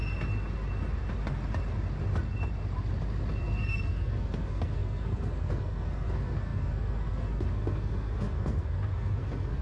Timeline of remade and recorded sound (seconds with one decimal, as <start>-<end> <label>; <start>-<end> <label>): 0.0-3.4 recorded; 3.4-9.6 remade